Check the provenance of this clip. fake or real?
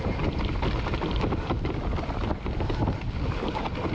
real